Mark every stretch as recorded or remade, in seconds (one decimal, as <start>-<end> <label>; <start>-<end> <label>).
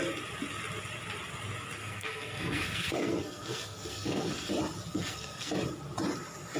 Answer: 0.0-1.8 recorded; 1.8-4.5 remade; 4.5-4.9 recorded; 4.9-5.5 remade; 5.5-6.6 recorded